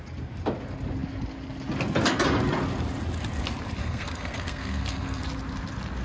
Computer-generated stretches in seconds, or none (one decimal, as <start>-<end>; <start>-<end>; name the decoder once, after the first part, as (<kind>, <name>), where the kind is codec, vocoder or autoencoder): 3.8-5.2 (codec, SNAC)